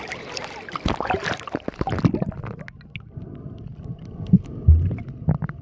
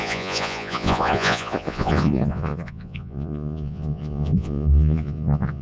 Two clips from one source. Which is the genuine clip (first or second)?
first